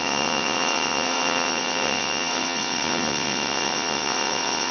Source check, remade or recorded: remade